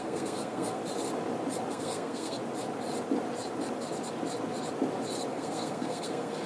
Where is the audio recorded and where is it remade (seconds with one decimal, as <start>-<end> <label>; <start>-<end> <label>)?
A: 0.0-0.8 remade; 0.8-1.7 recorded; 1.7-2.4 remade; 2.4-5.3 recorded; 5.3-6.5 remade